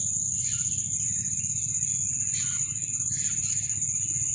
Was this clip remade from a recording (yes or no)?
no